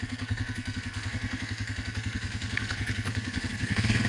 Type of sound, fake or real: fake